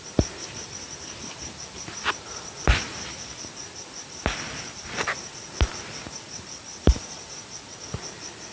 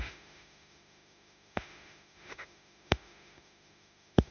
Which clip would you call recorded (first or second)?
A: first